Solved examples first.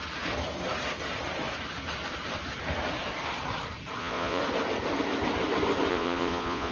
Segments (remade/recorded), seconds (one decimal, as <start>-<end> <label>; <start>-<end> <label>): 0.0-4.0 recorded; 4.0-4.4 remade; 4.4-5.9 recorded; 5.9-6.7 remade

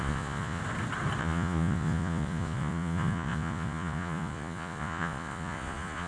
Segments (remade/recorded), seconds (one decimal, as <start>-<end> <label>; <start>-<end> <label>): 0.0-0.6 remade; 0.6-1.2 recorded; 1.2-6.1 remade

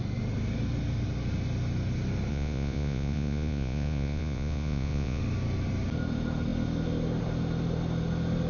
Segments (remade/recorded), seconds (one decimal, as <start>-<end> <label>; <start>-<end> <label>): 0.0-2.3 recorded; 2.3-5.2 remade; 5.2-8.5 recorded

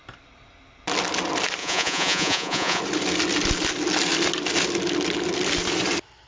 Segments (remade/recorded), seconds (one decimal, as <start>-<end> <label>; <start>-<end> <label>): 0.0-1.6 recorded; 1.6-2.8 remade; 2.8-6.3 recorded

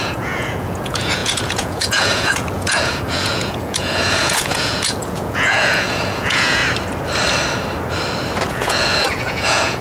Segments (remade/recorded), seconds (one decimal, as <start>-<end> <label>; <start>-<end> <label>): 0.0-6.6 remade; 6.6-8.5 recorded; 8.5-9.8 remade

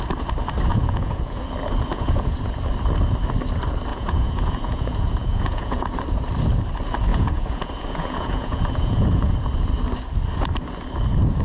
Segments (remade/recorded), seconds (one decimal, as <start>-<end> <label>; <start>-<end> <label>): 0.0-0.7 recorded; 0.7-1.4 remade; 1.4-1.9 recorded; 1.9-2.4 remade; 2.4-3.9 recorded; 3.9-6.0 remade; 6.0-7.1 recorded; 7.1-9.3 remade; 9.3-11.4 recorded

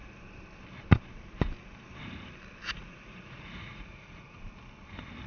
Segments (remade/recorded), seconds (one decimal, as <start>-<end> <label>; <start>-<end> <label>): 0.0-2.6 recorded; 2.6-4.4 remade; 4.4-5.3 recorded